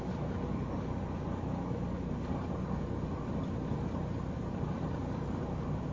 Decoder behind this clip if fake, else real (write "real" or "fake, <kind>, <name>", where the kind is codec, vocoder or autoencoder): real